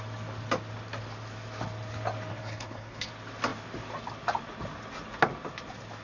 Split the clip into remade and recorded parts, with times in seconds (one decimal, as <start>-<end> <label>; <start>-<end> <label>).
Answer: 0.0-2.3 recorded; 2.3-3.1 remade; 3.1-6.0 recorded